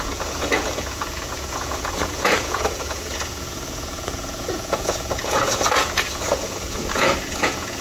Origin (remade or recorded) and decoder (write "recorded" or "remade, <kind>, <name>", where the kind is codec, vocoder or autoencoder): remade, vocoder, Vocos